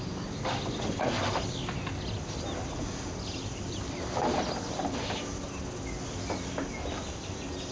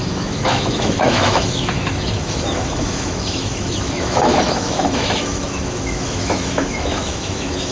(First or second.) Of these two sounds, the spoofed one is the second